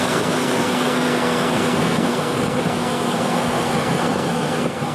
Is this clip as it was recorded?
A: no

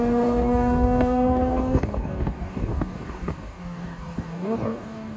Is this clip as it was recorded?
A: no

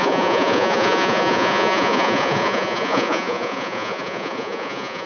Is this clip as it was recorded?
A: no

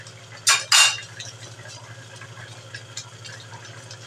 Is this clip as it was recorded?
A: yes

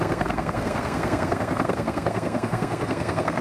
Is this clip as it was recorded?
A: no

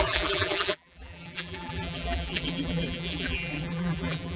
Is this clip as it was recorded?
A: no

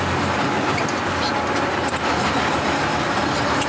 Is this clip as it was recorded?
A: yes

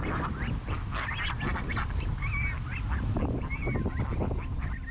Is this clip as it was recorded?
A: yes